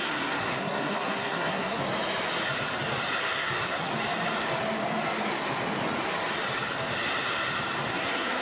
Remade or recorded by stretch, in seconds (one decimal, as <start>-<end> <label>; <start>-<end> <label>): 0.0-1.8 remade; 1.8-3.2 recorded; 3.2-3.9 remade; 3.9-7.9 recorded; 7.9-8.4 remade